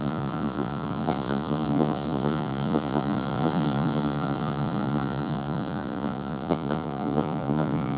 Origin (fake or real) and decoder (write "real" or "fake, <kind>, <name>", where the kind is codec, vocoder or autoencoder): fake, vocoder, Vocos